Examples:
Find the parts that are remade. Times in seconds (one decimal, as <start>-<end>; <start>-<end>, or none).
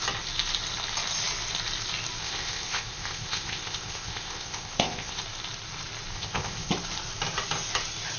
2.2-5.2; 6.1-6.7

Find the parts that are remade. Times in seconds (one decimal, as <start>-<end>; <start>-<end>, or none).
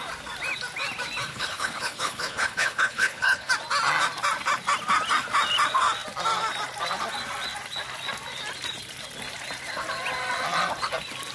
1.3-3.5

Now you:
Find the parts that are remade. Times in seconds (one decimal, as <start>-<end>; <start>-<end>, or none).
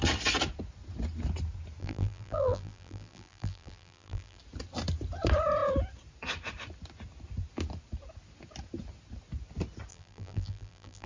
1.8-4.4; 9.9-11.1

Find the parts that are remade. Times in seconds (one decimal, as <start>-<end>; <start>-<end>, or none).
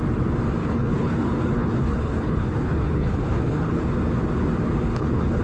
0.6-3.8; 4.9-5.4